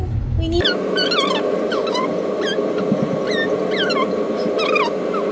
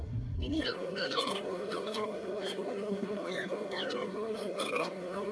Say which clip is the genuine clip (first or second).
first